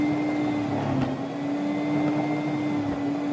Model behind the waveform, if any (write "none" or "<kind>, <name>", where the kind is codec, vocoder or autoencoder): none